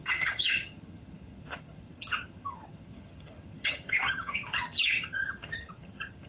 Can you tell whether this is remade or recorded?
remade